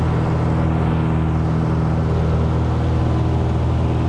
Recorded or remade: recorded